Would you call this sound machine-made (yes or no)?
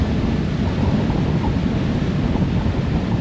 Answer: no